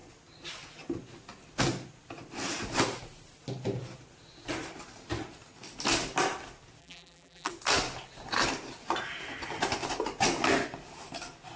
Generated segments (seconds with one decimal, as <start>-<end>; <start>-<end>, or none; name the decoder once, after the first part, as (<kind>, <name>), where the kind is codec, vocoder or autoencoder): 6.8-7.5 (vocoder, BigVGAN v2)